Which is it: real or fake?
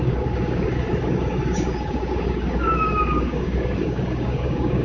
fake